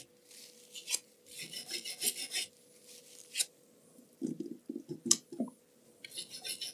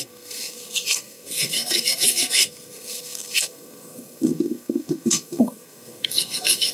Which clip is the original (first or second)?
first